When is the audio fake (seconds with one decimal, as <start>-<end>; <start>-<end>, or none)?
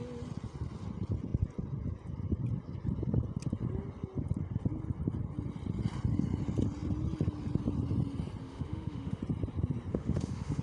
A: 8.4-9.2; 9.9-10.6